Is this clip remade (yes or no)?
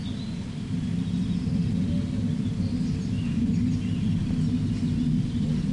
no